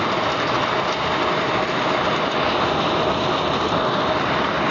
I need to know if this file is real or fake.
real